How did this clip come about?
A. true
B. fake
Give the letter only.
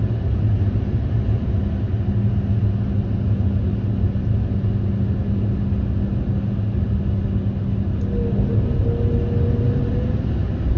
A